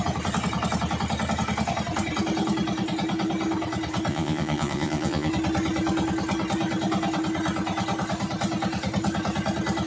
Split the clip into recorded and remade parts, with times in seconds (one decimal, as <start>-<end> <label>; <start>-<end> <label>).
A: 0.0-4.1 recorded; 4.1-5.3 remade; 5.3-9.9 recorded